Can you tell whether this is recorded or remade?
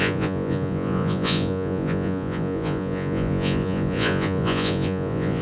remade